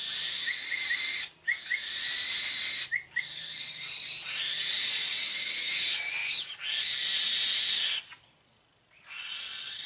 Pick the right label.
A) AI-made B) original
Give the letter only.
B